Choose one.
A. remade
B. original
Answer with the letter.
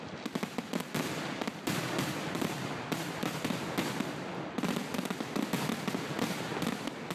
B